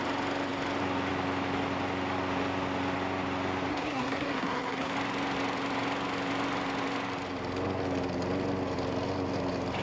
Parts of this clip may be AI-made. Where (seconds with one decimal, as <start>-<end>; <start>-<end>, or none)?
3.7-4.9